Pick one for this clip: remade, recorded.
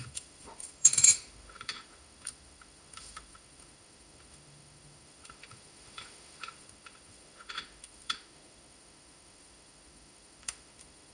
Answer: remade